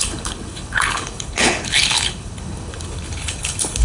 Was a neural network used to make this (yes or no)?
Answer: yes